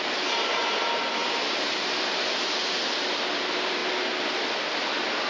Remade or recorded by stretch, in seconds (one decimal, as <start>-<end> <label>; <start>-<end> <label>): 0.0-5.3 recorded